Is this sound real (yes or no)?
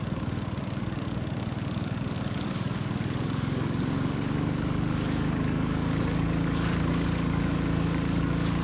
no